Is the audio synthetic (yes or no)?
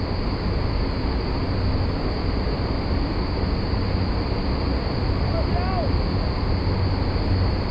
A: no